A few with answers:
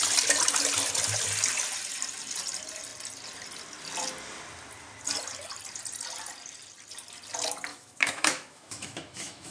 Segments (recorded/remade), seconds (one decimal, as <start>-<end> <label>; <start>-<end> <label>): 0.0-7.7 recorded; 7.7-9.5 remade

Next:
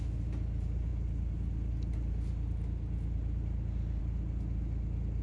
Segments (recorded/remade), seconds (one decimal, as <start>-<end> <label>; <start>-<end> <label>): 0.0-5.2 recorded

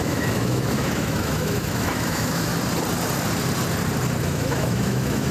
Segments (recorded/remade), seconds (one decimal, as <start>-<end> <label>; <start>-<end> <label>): 0.0-2.5 remade; 2.5-4.2 recorded; 4.2-5.3 remade

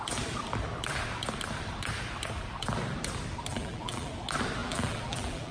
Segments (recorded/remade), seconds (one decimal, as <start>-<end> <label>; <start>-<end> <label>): 0.0-3.5 recorded; 3.5-4.1 remade; 4.1-4.6 recorded; 4.6-5.5 remade

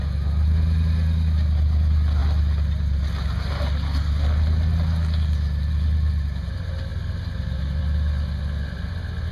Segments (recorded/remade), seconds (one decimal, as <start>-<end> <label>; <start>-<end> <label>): 0.0-9.3 recorded